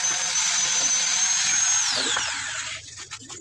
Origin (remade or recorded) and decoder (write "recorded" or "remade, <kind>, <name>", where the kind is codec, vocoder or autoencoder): recorded